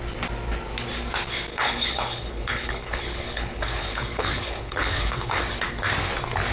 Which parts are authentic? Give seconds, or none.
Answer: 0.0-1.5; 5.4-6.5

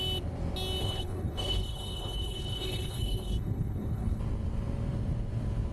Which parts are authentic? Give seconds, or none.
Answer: 0.0-0.8; 4.2-5.7

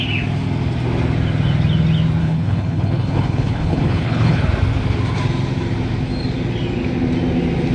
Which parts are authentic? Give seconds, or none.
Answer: 0.0-2.2; 4.4-7.7

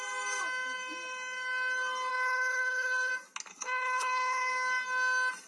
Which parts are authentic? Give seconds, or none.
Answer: 0.0-2.1; 3.1-3.5; 4.5-5.5

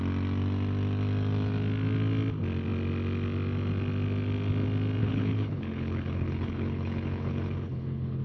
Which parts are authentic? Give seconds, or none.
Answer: 0.0-5.0